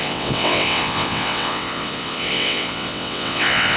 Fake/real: fake